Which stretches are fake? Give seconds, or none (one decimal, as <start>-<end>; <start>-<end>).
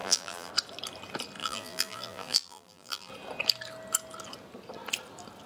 0.0-0.5; 1.4-3.1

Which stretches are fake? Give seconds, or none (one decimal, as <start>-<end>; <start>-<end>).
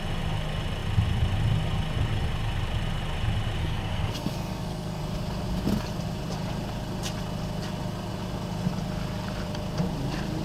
3.6-5.0